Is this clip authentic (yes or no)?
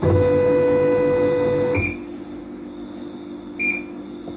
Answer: yes